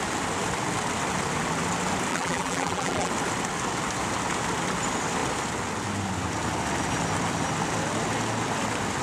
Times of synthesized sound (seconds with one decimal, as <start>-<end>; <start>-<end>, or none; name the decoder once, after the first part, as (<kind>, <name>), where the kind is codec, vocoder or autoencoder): 2.1-3.1 (vocoder, BigVGAN v2)